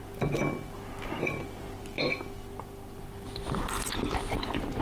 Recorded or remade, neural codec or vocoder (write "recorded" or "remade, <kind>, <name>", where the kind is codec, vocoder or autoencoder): recorded